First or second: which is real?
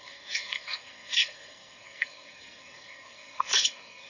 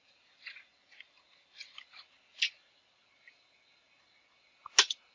second